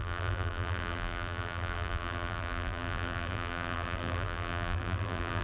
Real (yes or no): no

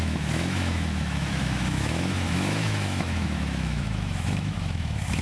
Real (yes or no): no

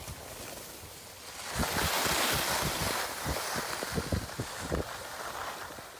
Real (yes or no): yes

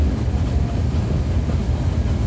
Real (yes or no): yes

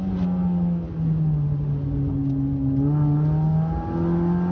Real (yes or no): yes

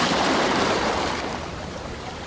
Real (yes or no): no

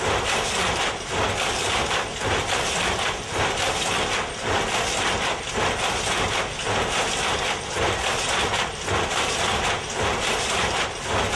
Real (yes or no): yes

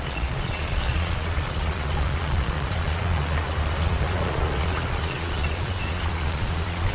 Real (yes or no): no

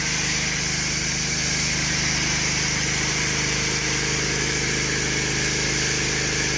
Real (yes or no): yes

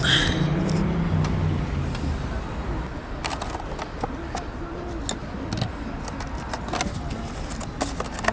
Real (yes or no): yes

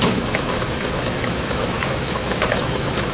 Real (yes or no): no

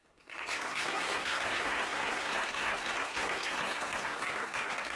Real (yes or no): no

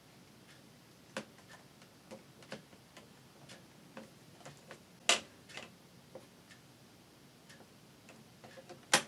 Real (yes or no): yes